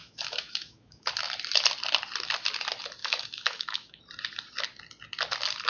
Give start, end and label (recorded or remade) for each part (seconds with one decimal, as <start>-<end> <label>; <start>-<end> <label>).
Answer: 0.0-1.1 remade; 1.1-3.0 recorded; 3.0-4.0 remade; 4.0-5.7 recorded